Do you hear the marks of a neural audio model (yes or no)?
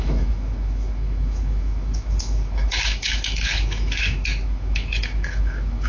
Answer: yes